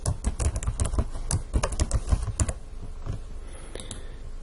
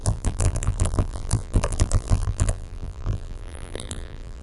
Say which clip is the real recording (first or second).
first